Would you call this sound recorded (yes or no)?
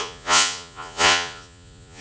no